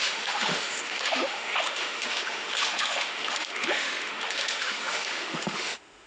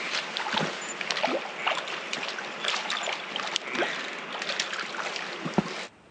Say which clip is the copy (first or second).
first